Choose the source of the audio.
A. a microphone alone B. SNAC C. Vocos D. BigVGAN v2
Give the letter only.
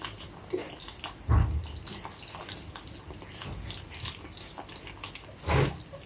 A